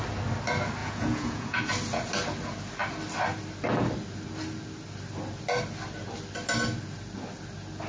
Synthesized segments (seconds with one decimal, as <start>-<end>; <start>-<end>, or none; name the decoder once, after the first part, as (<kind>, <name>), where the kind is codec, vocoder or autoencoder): 0.8-1.6 (vocoder, Vocos)